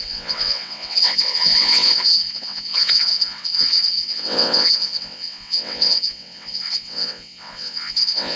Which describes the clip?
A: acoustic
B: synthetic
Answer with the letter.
B